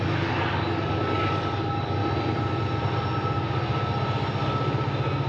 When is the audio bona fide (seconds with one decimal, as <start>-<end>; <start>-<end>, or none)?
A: 2.0-5.3